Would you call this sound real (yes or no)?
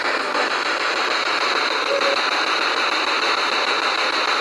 yes